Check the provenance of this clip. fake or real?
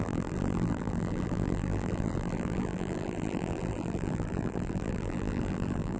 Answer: fake